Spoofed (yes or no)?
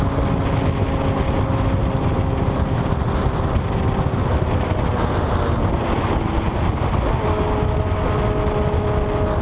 no